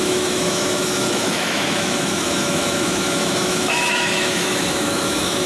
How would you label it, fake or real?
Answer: fake